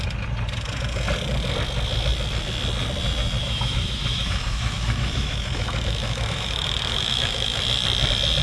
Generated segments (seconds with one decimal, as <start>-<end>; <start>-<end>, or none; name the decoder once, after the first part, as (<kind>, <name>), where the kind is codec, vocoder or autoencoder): 3.4-7.6 (autoencoder, DAC-VAE)